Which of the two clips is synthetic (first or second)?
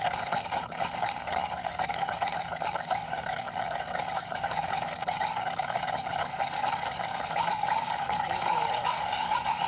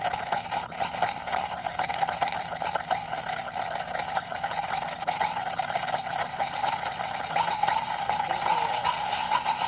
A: first